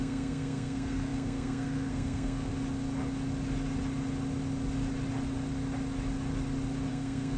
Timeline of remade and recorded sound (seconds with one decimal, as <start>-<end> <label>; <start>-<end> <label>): 0.0-2.5 remade; 2.5-6.9 recorded; 6.9-7.4 remade